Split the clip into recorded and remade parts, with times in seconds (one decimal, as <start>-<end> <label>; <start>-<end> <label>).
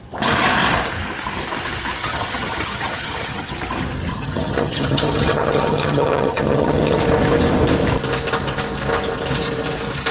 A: 0.0-2.0 recorded; 2.0-3.5 remade; 3.5-4.1 recorded; 4.1-7.0 remade; 7.0-10.1 recorded